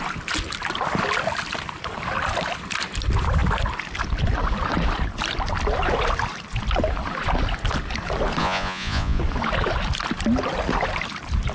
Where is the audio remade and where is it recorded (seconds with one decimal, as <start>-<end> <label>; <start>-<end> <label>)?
0.0-8.4 recorded; 8.4-9.2 remade; 9.2-11.5 recorded